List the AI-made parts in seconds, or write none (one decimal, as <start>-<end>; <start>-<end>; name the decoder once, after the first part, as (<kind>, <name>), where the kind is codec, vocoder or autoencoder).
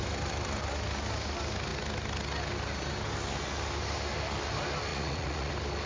4.9-5.5 (vocoder, Vocos)